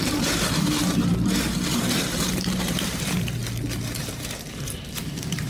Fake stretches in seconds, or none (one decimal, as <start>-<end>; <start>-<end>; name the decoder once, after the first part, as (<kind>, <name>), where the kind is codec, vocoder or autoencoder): 0.0-3.4 (vocoder, BigVGAN v2); 4.0-5.5

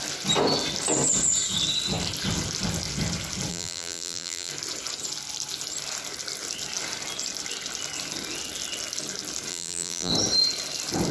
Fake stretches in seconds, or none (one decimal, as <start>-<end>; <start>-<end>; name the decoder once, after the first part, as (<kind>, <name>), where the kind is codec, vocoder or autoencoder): 3.5-4.5 (vocoder, BigVGAN v2); 9.5-10.1